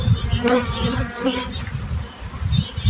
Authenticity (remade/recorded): recorded